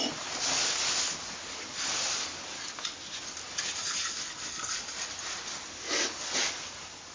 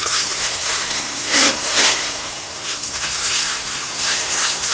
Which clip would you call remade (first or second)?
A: second